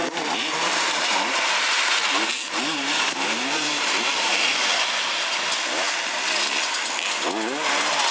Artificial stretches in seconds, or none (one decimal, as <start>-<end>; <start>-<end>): 0.0-4.6